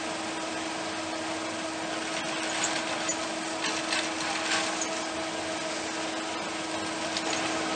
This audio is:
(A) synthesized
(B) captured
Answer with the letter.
B